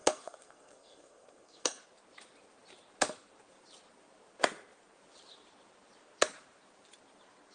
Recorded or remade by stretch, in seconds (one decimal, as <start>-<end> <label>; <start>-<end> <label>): 0.0-1.8 remade; 1.8-7.5 recorded